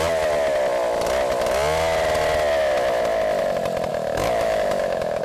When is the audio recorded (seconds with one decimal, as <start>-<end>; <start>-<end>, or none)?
0.0-3.9